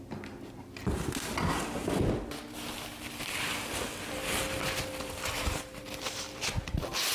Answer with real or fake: real